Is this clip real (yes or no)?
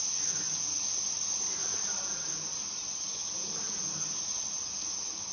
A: yes